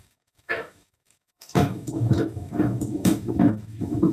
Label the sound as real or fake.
fake